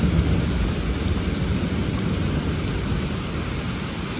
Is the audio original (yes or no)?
yes